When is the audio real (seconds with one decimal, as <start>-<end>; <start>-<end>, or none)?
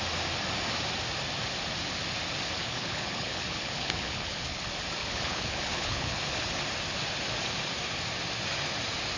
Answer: 0.0-2.6; 4.6-5.0; 6.6-9.2